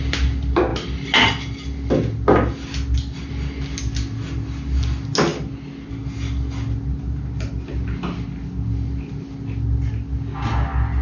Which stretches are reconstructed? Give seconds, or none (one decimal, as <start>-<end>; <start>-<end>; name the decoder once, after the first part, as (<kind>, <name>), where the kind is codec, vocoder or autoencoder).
none

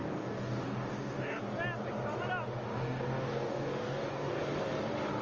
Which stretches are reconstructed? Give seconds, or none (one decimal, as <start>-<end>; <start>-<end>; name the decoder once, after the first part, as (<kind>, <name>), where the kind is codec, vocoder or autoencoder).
0.0-1.4 (codec, DAC); 2.7-4.4

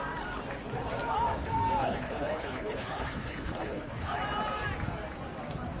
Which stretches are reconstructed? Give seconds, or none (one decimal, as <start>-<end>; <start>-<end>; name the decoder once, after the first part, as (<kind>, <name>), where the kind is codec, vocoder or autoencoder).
1.8-4.2 (codec, HILCodec)